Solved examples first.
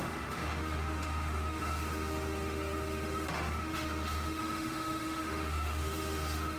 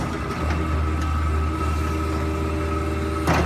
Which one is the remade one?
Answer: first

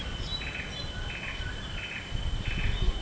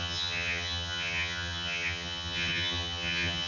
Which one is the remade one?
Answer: second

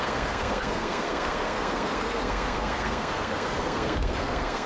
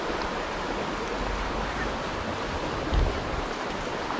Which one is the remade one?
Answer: first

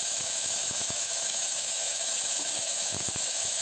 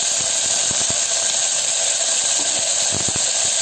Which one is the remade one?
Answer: first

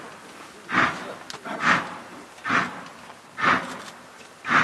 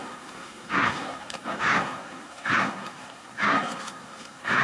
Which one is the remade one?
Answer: second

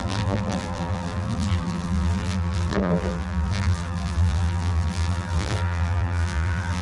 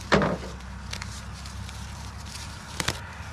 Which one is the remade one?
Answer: first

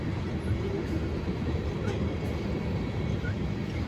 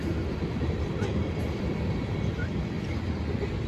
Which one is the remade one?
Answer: second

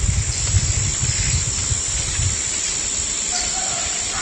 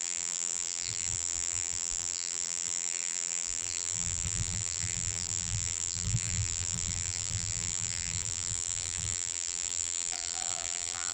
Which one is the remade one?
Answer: second